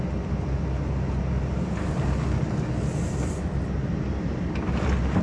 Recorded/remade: recorded